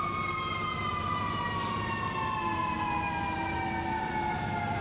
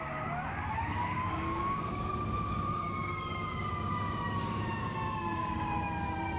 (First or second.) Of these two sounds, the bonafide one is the first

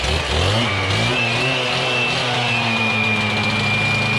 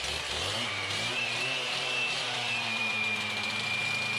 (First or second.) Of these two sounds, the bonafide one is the first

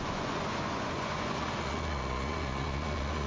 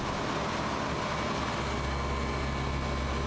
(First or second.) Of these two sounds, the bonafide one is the second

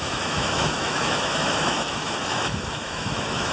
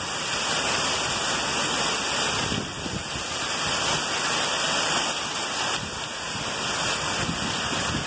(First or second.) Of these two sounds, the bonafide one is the second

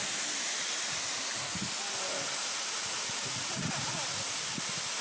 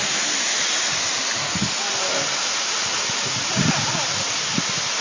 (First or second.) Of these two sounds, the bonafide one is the second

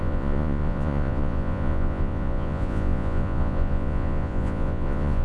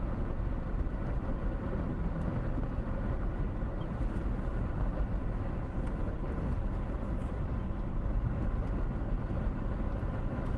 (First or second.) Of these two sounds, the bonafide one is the second